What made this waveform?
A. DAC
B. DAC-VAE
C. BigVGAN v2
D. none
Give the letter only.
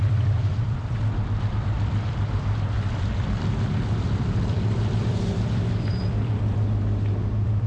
C